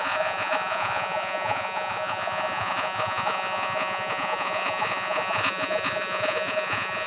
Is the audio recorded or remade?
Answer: remade